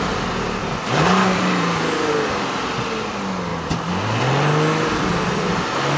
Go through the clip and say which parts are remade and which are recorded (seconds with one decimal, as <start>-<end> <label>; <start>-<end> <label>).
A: 0.0-0.6 recorded; 0.6-2.1 remade; 2.1-6.0 recorded